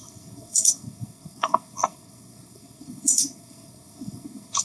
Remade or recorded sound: remade